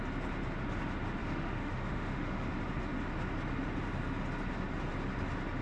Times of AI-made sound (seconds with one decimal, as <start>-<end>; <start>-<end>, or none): 1.2-2.5